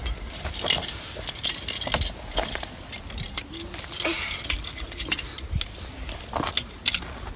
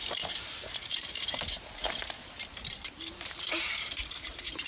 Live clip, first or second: first